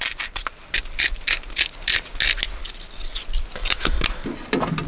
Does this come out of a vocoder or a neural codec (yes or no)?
no